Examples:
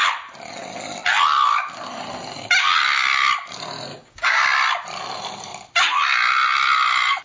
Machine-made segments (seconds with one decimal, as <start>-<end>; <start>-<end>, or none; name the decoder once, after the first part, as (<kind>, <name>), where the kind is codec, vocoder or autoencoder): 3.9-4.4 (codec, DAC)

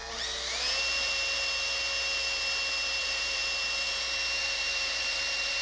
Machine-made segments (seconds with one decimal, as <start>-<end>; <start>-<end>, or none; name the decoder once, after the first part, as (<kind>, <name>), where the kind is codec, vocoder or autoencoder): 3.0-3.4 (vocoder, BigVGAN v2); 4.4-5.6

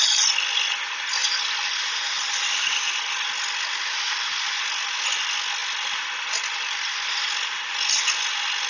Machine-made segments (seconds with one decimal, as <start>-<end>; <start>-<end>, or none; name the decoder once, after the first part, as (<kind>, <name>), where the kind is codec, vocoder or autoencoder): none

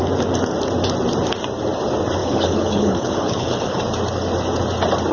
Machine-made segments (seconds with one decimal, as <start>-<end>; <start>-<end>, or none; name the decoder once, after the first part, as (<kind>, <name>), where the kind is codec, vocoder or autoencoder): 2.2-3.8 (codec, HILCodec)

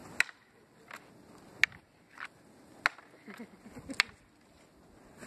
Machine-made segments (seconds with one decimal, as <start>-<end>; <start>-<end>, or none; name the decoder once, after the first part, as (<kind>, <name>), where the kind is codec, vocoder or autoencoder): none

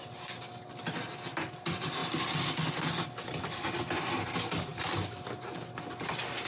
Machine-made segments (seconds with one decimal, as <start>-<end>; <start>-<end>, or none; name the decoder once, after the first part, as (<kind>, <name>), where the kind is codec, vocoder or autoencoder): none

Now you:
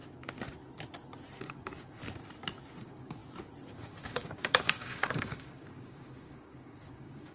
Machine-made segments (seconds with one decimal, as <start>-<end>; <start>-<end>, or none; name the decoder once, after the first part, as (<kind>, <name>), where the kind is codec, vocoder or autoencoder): 1.4-2.0 (codec, DAC); 2.8-3.2; 3.7-7.3